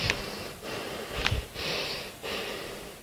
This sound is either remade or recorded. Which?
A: recorded